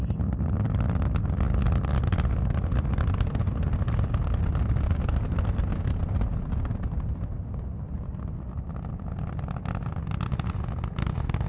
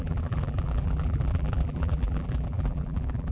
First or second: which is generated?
second